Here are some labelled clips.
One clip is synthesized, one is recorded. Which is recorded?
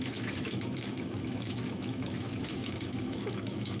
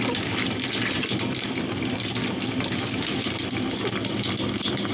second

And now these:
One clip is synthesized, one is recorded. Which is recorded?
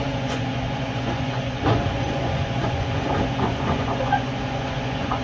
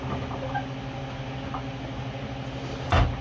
second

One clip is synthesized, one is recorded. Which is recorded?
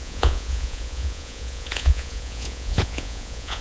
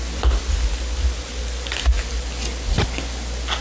second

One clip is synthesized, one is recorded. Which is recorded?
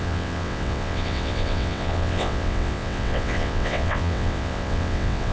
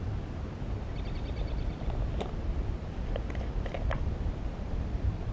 second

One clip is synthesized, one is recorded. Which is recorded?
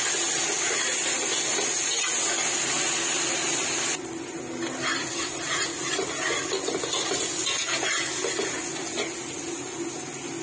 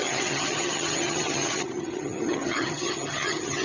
first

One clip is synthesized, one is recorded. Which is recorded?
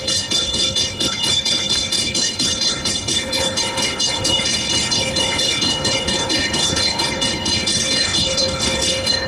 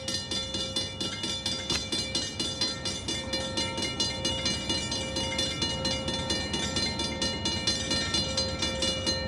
second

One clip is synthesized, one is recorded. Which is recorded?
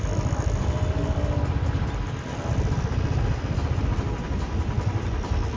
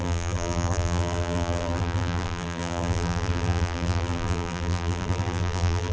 first